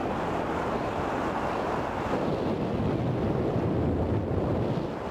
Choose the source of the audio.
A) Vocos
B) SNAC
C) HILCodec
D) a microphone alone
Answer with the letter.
D